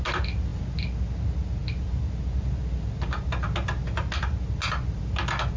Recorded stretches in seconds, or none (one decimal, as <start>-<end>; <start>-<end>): 0.0-5.6

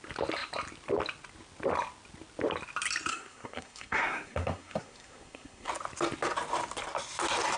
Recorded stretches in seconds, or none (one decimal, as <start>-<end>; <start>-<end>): 0.0-3.1; 5.7-7.6

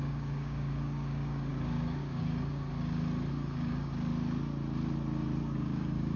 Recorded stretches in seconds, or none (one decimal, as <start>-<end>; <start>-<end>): 2.7-3.3; 4.1-5.4

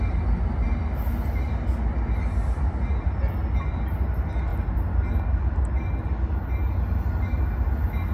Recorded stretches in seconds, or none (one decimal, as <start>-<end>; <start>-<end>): 0.0-8.1

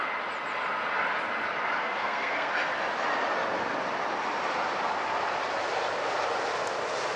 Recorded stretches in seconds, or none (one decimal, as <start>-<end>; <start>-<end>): 0.0-1.8; 2.5-7.2